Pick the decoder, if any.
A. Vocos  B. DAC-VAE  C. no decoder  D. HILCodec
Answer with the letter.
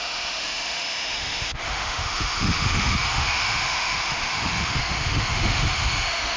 B